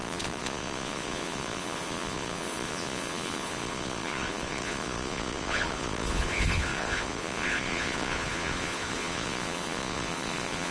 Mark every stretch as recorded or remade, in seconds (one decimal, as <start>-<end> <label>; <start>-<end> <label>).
0.0-10.7 remade